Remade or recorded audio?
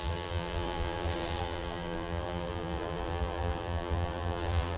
remade